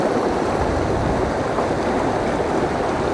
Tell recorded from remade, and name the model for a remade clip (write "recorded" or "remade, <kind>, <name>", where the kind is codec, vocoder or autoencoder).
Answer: recorded